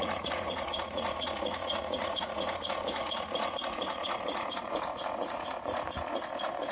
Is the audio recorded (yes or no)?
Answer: no